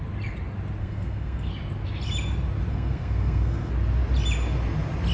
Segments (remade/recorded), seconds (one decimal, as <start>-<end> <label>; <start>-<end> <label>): 0.0-0.8 recorded; 0.8-1.5 remade; 1.5-2.7 recorded; 2.7-3.7 remade; 3.7-5.1 recorded

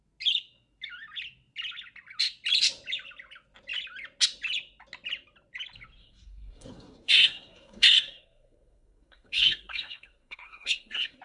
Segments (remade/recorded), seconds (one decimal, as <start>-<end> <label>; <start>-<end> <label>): 0.0-6.0 recorded; 6.0-11.2 remade

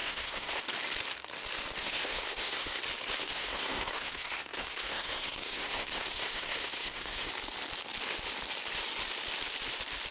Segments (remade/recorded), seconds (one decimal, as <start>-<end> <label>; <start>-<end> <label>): 0.0-0.6 remade; 0.6-1.8 recorded; 1.8-2.8 remade; 2.8-3.2 recorded; 3.2-7.3 remade; 7.3-10.1 recorded

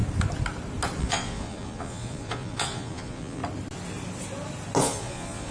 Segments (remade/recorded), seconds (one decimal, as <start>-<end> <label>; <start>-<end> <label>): 0.0-1.0 recorded; 1.0-3.4 remade; 3.4-4.8 recorded; 4.8-5.5 remade

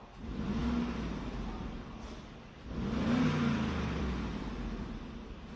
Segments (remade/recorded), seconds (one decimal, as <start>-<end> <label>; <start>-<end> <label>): 0.0-5.6 recorded

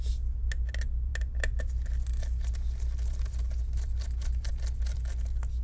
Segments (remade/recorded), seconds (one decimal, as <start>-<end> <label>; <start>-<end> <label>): 0.0-5.6 recorded